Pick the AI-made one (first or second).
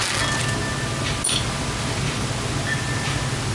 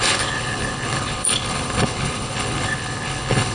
second